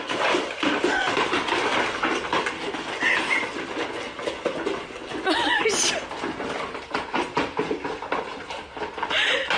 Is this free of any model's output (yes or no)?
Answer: yes